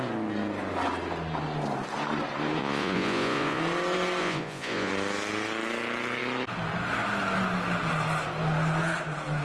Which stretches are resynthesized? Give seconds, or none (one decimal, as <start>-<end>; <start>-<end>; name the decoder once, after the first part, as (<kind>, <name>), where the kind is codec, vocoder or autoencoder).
2.6-3.6 (vocoder, Vocos); 4.2-4.9